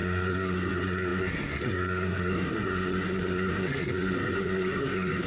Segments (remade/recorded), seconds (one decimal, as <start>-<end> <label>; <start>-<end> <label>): 0.0-5.3 remade